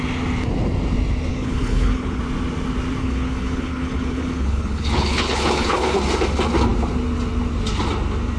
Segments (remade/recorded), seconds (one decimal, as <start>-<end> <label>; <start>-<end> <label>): 0.0-1.3 recorded; 1.3-2.2 remade; 2.2-3.0 recorded; 3.0-6.0 remade; 6.0-8.4 recorded